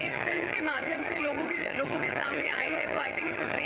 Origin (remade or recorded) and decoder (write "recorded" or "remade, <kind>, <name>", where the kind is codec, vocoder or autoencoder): remade, vocoder, HiFi-GAN